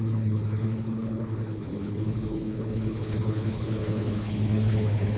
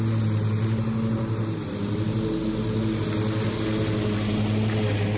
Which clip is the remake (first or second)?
first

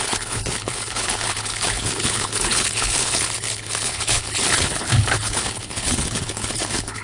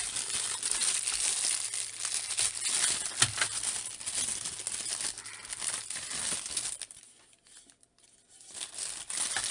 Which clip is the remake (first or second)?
first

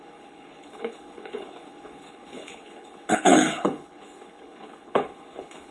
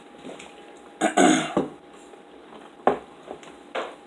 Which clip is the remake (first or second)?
first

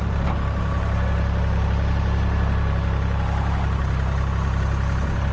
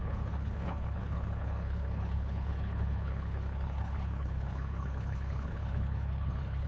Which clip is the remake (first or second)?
second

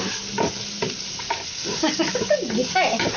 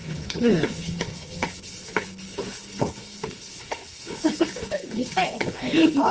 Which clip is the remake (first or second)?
second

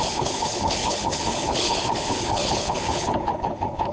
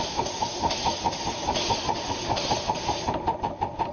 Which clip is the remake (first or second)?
first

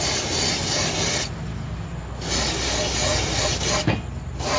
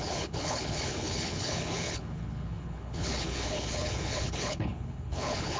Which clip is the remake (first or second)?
second